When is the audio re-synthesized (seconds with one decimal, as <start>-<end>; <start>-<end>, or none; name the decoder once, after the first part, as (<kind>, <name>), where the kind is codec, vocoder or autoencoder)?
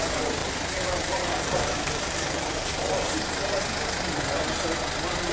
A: 0.4-3.6 (vocoder, BigVGAN v2)